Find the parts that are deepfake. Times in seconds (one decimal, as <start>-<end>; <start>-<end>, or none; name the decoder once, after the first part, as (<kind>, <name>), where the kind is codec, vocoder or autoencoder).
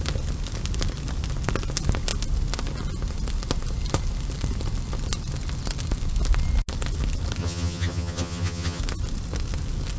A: 7.4-8.8 (vocoder, HiFi-GAN)